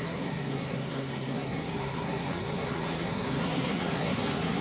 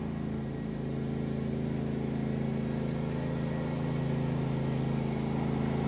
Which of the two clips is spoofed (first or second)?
first